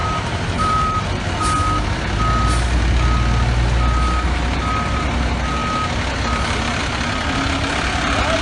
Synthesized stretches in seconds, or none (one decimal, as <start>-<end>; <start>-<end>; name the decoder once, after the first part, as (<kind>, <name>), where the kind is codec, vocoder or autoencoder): 0.0-1.6 (vocoder, BigVGAN v2)